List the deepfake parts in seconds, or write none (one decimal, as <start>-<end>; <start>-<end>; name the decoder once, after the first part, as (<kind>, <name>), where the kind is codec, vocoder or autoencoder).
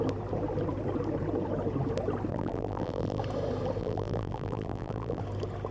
2.3-3.2 (vocoder, BigVGAN v2); 3.8-5.2